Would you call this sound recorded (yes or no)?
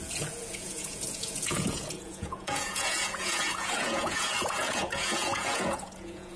no